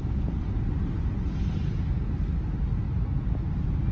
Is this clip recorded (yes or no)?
yes